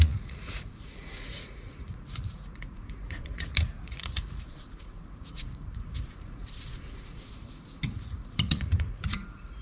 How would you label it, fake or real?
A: fake